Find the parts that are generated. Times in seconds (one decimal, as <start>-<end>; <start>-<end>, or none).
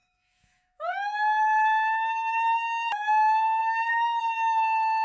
0.0-5.0